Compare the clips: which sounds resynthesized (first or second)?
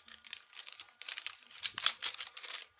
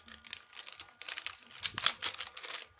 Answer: first